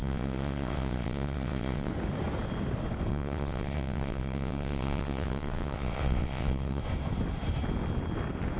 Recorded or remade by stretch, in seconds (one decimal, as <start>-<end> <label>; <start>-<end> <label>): 0.0-1.9 remade; 1.9-3.1 recorded; 3.1-6.8 remade; 6.8-8.6 recorded

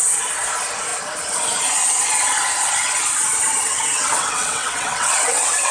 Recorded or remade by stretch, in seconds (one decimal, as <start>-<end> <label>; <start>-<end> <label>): 0.0-3.7 recorded; 3.7-5.7 remade

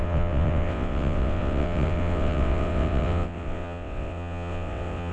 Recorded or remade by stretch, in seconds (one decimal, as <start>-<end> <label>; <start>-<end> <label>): 0.0-5.1 remade

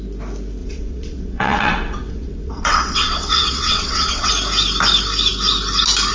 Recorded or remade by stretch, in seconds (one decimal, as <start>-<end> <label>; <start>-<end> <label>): 0.0-0.6 recorded; 0.6-4.3 remade; 4.3-6.1 recorded

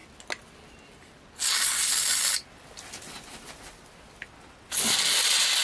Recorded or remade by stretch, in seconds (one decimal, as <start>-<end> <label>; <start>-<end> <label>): 0.0-5.6 recorded

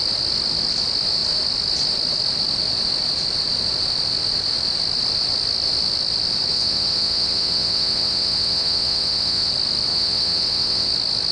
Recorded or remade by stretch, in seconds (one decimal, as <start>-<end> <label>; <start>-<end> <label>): 0.0-6.5 recorded; 6.5-9.5 remade; 9.5-9.9 recorded; 9.9-10.9 remade; 10.9-11.3 recorded

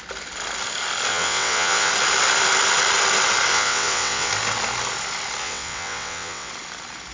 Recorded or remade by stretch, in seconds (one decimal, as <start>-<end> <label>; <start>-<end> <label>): 0.0-1.1 recorded; 1.1-1.9 remade; 1.9-3.5 recorded; 3.5-4.3 remade; 4.3-5.4 recorded; 5.4-6.5 remade; 6.5-7.1 recorded